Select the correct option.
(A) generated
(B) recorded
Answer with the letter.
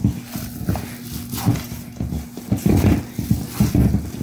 B